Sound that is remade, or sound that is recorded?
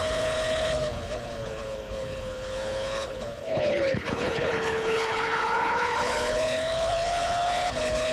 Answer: remade